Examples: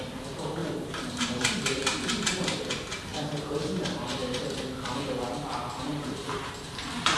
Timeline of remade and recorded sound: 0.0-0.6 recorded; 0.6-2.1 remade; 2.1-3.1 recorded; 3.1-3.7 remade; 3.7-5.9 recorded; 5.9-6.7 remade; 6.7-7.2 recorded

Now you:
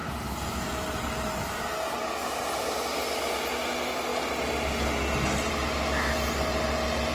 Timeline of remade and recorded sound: 0.0-1.7 remade; 1.7-7.1 recorded

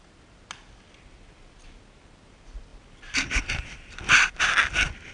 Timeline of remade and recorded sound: 0.0-5.1 recorded

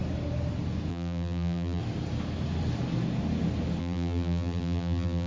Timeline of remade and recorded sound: 0.0-0.9 recorded; 0.9-1.8 remade; 1.8-3.8 recorded; 3.8-5.3 remade

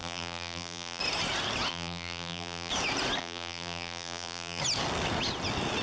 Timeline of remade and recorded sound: 0.0-1.0 remade; 1.0-1.7 recorded; 1.7-2.7 remade; 2.7-3.2 recorded; 3.2-4.6 remade; 4.6-5.8 recorded

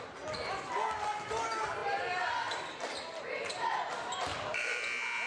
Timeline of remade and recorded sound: 0.0-5.3 recorded

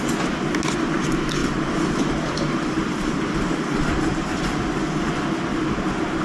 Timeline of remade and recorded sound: 0.0-1.4 recorded; 1.4-5.1 remade; 5.1-6.2 recorded

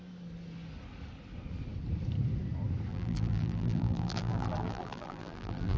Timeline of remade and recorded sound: 0.0-2.9 recorded; 2.9-5.8 remade